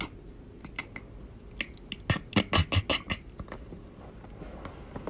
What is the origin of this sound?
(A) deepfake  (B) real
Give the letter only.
B